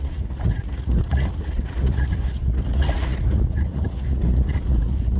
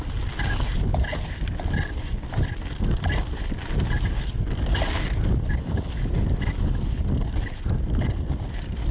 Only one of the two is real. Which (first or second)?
second